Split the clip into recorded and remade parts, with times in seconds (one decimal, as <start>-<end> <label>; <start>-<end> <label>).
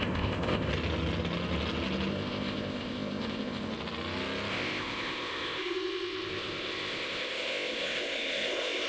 0.0-0.7 remade; 0.7-2.1 recorded; 2.1-3.7 remade; 3.7-4.5 recorded; 4.5-8.9 remade